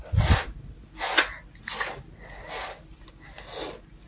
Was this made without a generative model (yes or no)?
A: yes